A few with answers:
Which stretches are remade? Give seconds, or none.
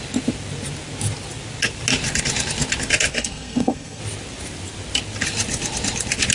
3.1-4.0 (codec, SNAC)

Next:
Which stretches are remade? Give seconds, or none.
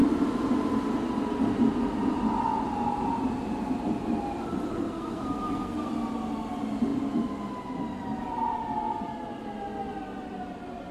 4.7-5.9 (codec, SNAC)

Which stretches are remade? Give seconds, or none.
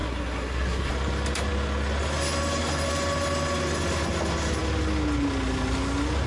0.0-0.9 (codec, SNAC)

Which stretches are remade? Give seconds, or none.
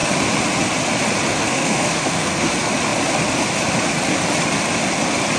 1.3-2.5 (codec, SNAC)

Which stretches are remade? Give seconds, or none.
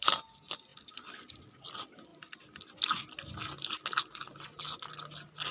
none